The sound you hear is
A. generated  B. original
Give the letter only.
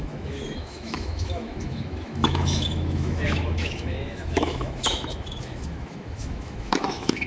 A